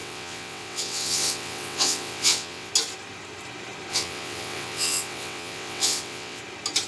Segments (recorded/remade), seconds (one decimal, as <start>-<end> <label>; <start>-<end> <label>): 0.0-2.7 remade; 2.7-3.9 recorded; 3.9-6.4 remade; 6.4-6.9 recorded